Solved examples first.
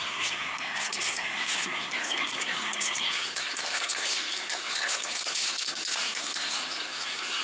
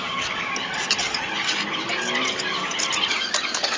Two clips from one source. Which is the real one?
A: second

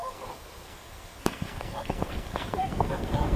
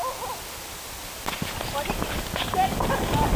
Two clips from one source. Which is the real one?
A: second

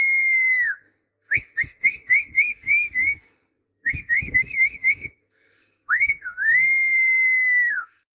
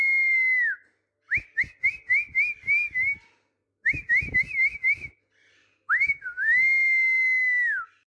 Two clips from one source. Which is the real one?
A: second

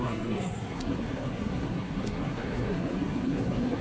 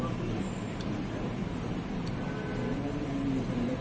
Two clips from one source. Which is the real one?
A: second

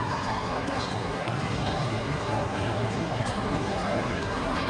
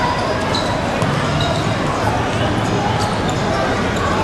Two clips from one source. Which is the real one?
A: second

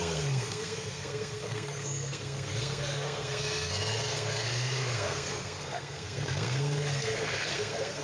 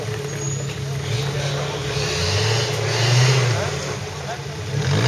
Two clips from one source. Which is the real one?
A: second